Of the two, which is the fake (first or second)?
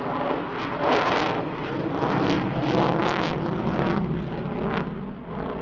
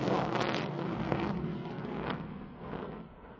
second